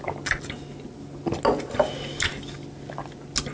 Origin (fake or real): real